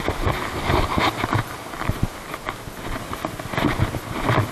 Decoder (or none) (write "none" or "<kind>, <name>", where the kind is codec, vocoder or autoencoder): none